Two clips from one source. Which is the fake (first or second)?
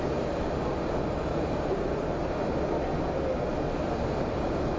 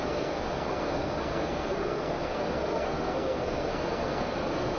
second